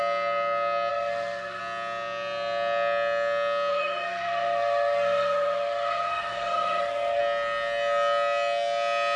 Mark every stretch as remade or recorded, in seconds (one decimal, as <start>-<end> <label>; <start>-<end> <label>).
0.0-0.9 recorded; 0.9-1.6 remade; 1.6-3.7 recorded; 3.7-7.2 remade; 7.2-9.2 recorded